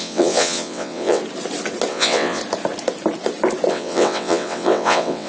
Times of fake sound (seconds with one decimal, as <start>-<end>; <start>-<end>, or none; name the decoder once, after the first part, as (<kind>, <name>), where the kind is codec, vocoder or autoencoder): 0.0-1.2 (vocoder, WaveNeXt); 1.9-2.4; 3.7-5.3